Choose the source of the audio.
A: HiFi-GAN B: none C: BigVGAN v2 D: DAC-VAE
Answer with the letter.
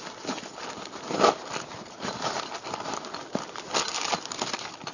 B